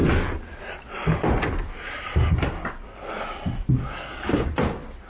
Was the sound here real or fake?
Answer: real